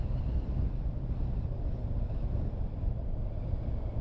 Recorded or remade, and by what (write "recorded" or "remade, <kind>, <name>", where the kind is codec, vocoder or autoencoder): recorded